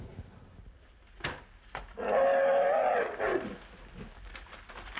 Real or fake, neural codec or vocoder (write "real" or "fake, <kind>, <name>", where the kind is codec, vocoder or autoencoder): real